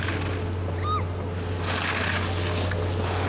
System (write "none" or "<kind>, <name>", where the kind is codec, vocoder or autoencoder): none